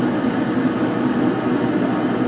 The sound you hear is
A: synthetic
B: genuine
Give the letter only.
B